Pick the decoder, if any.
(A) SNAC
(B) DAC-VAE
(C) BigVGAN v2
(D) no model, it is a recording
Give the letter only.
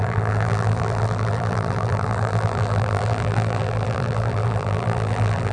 C